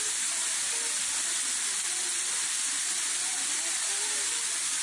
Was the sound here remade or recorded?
recorded